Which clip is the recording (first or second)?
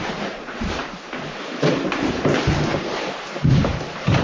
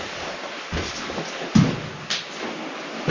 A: second